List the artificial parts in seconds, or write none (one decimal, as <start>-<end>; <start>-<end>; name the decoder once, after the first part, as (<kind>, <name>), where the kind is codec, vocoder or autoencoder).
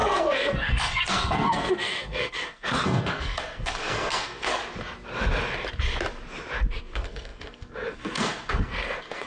0.0-4.6 (codec, SNAC); 6.8-9.3